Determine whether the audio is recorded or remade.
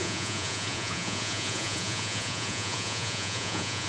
remade